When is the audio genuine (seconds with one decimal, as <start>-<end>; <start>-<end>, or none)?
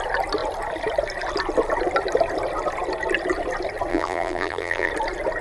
0.0-3.9; 4.9-5.4